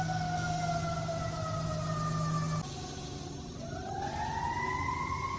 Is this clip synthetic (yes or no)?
no